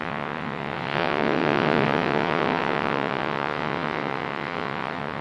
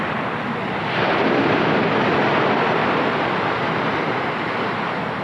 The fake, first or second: first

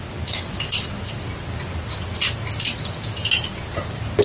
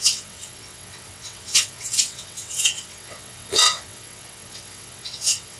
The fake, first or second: second